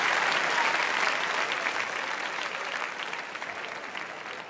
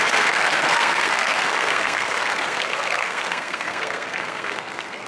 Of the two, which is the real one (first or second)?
first